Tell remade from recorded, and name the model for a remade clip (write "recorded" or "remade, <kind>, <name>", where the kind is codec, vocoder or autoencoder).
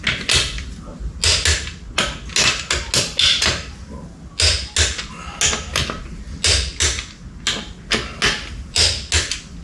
recorded